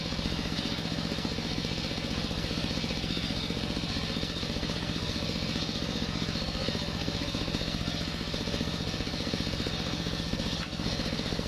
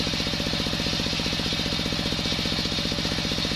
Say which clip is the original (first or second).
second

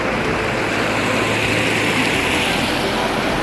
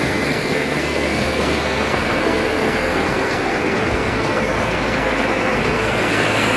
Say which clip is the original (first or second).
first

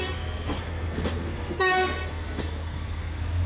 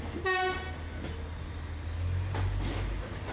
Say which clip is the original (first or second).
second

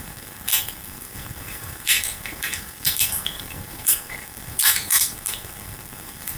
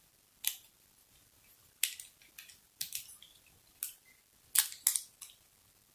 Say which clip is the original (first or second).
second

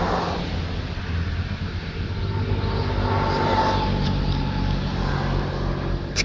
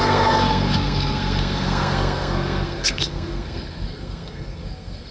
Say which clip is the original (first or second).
first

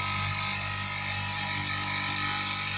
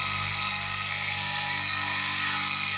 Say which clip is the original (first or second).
first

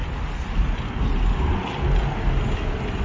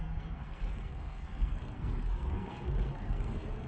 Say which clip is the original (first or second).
first